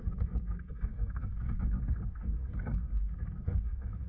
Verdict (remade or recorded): remade